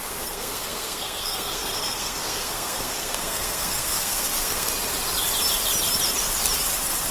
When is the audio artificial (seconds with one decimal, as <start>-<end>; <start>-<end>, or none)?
0.0-4.7